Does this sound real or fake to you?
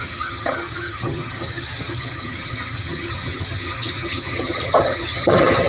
fake